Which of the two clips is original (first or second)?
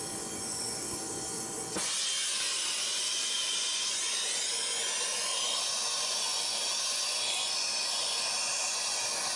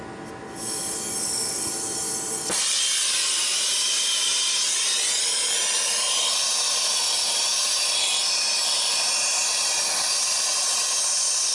second